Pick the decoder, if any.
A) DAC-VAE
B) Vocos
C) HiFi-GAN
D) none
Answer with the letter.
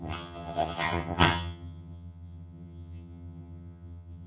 C